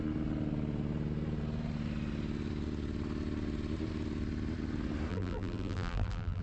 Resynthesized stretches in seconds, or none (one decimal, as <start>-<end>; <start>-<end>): 5.1-6.4